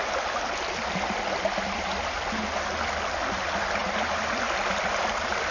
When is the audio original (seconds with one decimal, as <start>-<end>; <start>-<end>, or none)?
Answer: 0.0-5.5